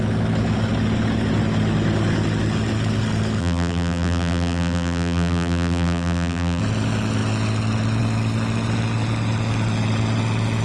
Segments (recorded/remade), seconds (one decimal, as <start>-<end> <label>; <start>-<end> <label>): 0.0-3.4 recorded; 3.4-6.6 remade; 6.6-10.6 recorded